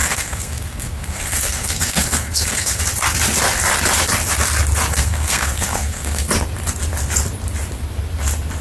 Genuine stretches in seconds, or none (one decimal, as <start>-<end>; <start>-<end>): 2.8-4.9; 6.3-8.6

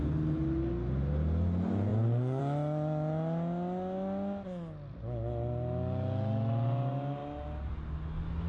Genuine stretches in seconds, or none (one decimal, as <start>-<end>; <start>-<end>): 0.0-8.5